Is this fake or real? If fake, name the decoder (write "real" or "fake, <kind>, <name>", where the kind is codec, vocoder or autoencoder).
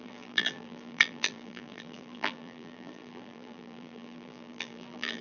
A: fake, vocoder, BigVGAN v2